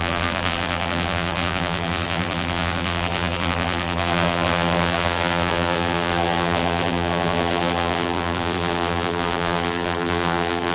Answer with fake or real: fake